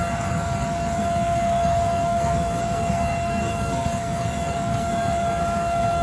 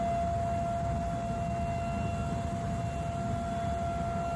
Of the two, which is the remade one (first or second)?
first